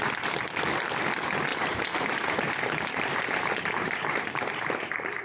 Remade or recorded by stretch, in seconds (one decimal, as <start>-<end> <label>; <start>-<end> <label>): 0.0-1.5 recorded; 1.5-4.6 remade; 4.6-5.2 recorded